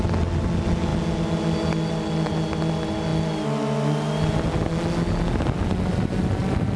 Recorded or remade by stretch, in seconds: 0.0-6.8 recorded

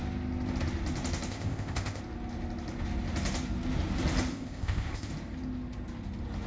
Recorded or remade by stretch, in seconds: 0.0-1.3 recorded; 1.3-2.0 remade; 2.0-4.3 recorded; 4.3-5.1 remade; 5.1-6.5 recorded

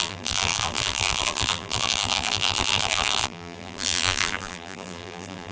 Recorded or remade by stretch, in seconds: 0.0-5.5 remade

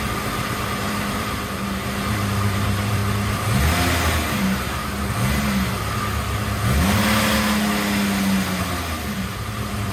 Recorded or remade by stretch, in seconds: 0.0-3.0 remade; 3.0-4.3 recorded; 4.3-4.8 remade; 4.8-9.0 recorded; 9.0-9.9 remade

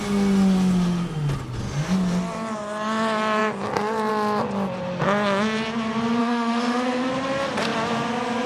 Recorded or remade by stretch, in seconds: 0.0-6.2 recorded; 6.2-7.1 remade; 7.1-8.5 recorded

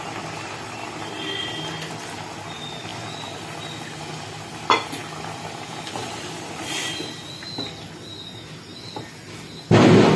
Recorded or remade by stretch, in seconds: 0.0-10.2 recorded

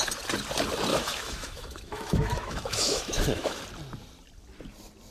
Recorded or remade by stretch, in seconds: 0.0-0.9 recorded; 0.9-3.6 remade; 3.6-5.1 recorded